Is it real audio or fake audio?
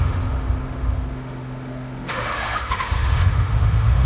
fake